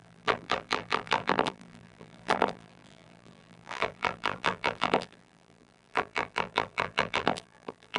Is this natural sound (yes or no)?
no